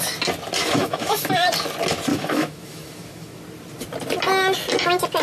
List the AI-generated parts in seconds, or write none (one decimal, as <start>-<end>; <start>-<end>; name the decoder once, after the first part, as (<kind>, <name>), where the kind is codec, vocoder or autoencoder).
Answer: 0.6-1.3 (autoencoder, DAC-VAE); 2.1-3.4